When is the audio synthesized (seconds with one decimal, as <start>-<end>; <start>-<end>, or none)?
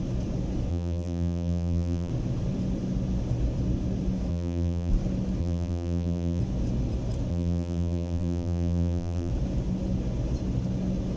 0.7-2.1; 4.3-4.9; 5.4-6.4; 7.3-9.3